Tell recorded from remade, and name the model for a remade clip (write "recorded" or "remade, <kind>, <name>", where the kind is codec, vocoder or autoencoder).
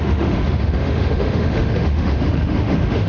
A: remade, autoencoder, DAC-VAE